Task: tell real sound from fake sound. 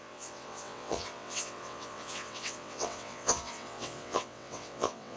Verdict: fake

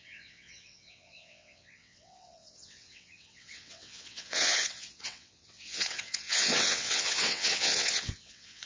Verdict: fake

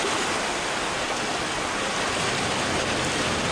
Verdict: real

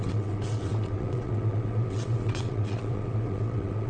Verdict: fake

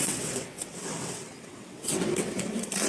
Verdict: fake